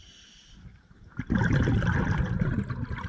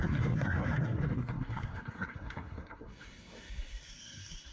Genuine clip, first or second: first